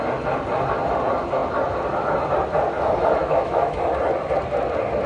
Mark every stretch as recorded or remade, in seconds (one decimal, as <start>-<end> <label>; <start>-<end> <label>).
0.0-3.2 recorded; 3.2-3.8 remade; 3.8-5.1 recorded